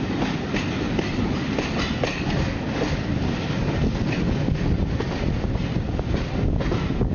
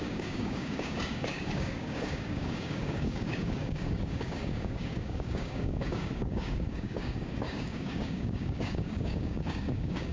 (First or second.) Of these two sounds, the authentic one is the first